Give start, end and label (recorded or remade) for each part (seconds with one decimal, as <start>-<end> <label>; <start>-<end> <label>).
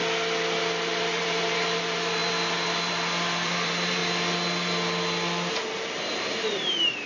0.0-0.8 recorded; 0.8-4.0 remade; 4.0-5.5 recorded; 5.5-7.1 remade